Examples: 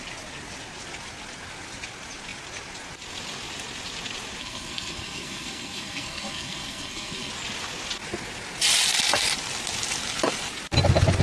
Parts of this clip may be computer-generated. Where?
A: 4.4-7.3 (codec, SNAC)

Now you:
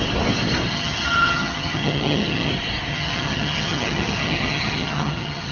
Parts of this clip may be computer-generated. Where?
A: 0.7-2.5 (vocoder, HiFi-GAN); 2.9-5.5

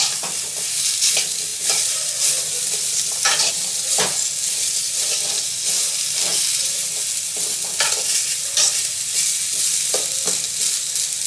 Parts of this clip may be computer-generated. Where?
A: none

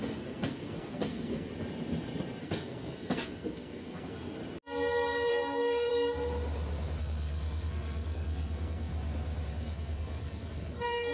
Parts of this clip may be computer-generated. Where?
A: 0.0-1.5 (codec, SNAC); 2.4-4.4; 5.3-5.9; 7.0-8.9; 9.5-11.1

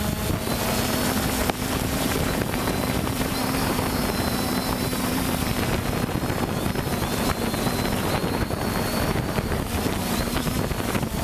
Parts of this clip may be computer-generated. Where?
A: 1.4-5.5 (vocoder, BigVGAN v2); 8.2-10.5

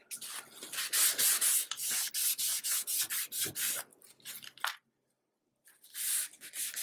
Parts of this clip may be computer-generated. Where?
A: 1.3-2.1 (vocoder, Vocos); 2.5-3.1